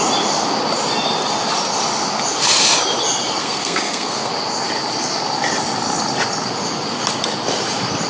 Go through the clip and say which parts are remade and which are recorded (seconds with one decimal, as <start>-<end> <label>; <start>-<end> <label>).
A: 0.0-3.4 recorded; 3.4-4.3 remade; 4.3-8.1 recorded